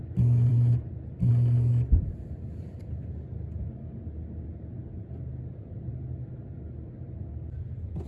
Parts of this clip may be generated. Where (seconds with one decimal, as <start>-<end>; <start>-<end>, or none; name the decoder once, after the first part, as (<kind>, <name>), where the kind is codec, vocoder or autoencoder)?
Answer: 0.5-1.3 (vocoder, BigVGAN v2)